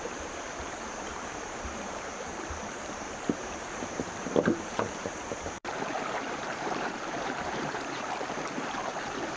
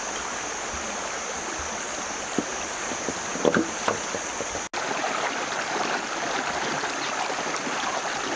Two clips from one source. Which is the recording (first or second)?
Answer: second